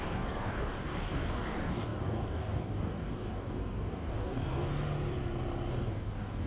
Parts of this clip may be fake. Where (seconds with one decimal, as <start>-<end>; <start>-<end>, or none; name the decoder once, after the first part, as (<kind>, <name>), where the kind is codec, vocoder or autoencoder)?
0.0-4.7 (codec, DAC); 5.7-6.5